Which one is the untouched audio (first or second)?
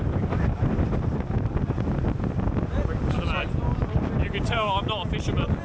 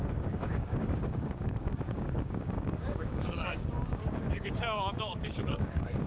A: first